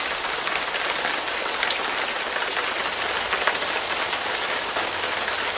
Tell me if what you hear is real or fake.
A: real